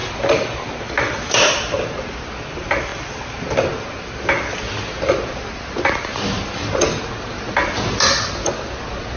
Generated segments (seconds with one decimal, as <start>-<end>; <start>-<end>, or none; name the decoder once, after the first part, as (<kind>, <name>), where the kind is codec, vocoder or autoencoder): none